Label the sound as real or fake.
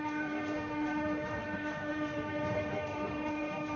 fake